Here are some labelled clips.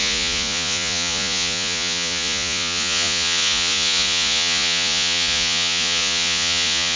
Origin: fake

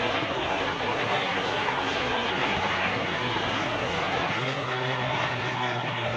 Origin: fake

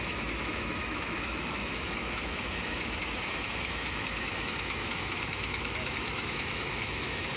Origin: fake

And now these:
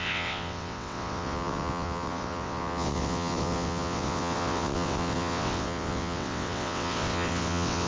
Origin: fake